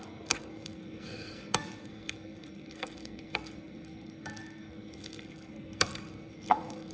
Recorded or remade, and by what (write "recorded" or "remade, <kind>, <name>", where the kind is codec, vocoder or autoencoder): remade, codec, SNAC